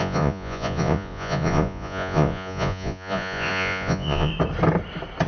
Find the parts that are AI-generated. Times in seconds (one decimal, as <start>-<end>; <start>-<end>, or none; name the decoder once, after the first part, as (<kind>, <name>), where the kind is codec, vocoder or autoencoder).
0.0-4.3 (vocoder, Vocos)